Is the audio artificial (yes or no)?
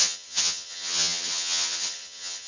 yes